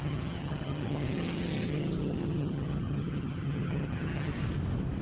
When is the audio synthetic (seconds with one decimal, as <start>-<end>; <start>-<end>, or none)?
0.0-4.3